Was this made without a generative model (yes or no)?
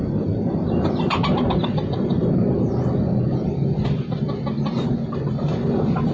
no